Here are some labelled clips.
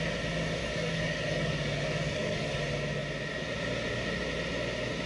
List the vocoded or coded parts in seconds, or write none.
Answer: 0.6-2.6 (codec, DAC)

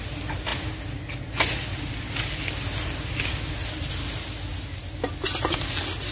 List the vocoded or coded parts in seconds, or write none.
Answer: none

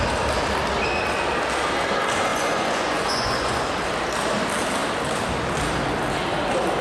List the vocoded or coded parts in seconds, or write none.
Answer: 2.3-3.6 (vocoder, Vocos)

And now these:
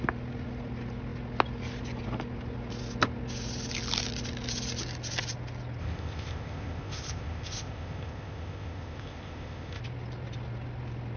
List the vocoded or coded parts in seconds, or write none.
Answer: 5.8-9.8 (codec, ZipCodec)

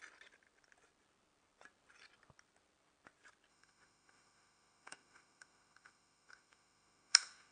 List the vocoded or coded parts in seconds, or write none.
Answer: 3.5-7.5 (autoencoder, DAC-VAE)

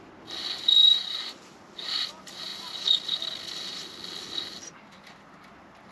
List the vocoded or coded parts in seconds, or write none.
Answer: none